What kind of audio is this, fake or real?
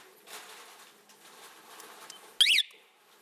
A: real